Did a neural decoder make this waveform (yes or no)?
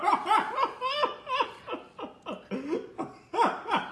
no